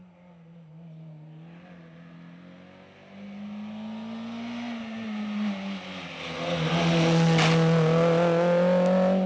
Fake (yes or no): no